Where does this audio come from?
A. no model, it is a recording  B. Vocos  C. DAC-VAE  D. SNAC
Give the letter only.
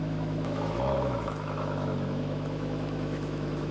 C